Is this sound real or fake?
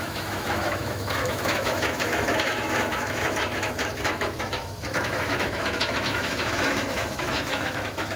fake